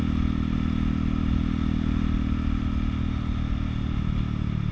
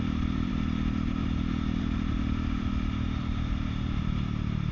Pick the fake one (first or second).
second